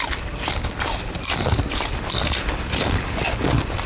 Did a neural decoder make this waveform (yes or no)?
no